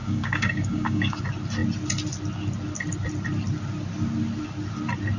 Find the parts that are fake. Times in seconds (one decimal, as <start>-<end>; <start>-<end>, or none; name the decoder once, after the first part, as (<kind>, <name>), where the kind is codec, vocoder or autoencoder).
0.0-1.2 (codec, DAC)